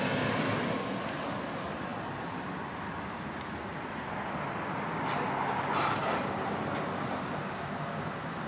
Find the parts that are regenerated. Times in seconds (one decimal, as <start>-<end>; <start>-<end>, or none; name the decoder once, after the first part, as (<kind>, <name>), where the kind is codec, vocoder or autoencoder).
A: none